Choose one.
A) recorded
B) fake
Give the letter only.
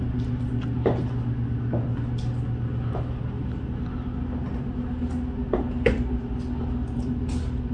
A